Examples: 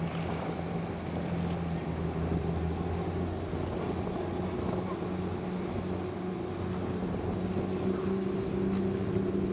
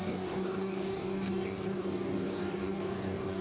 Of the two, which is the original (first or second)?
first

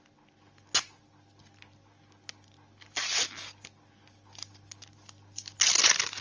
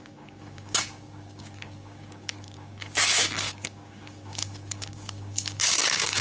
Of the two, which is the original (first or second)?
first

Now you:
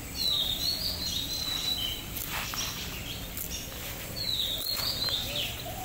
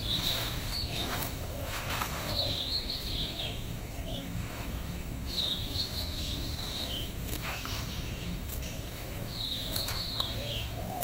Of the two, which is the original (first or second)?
first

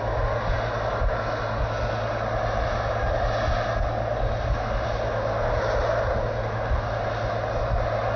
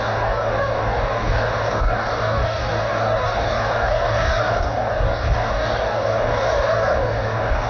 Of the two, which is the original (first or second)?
first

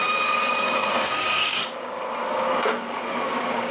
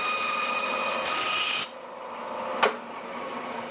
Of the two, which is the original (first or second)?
second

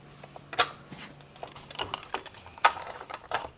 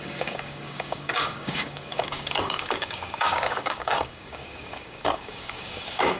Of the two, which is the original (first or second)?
first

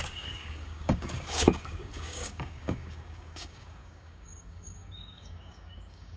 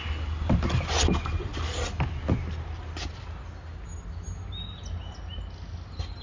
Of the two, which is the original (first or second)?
second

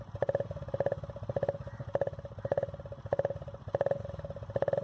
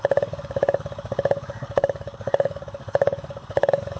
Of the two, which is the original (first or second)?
first